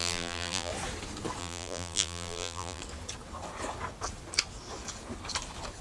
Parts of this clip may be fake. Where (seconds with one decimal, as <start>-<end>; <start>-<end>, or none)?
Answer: 0.0-0.7; 1.4-2.8